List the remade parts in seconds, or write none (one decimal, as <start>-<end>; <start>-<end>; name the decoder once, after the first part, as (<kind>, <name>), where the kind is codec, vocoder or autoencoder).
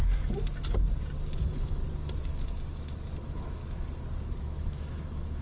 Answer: 1.4-1.8 (autoencoder, DAC-VAE); 3.2-3.6; 4.4-5.4